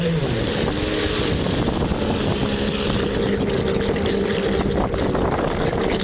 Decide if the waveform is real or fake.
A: real